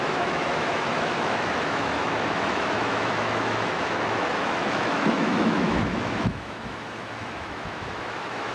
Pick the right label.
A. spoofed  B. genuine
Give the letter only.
A